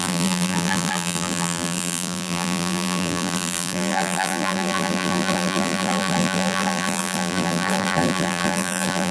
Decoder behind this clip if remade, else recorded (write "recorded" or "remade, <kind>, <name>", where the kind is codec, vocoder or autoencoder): remade, vocoder, BigVGAN v2